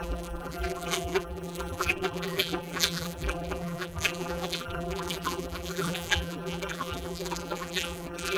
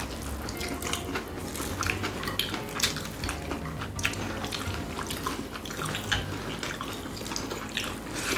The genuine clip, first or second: second